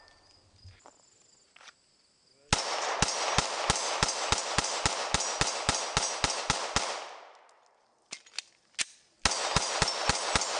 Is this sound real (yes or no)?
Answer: yes